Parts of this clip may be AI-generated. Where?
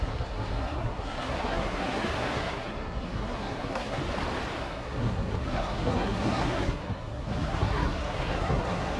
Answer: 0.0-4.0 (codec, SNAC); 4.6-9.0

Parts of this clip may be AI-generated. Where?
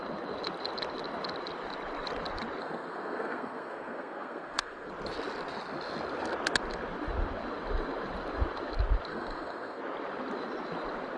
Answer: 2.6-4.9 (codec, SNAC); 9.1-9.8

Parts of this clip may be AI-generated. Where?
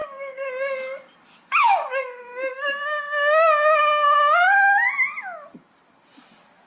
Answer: 0.0-0.5 (codec, DAC); 1.6-3.9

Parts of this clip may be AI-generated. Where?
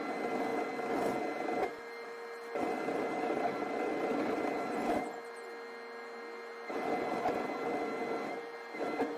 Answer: none